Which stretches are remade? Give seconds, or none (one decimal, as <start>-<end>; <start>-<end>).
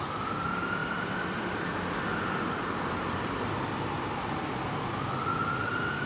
0.0-6.1